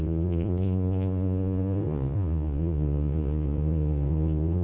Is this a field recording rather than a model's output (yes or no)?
no